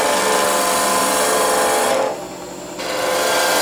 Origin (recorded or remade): recorded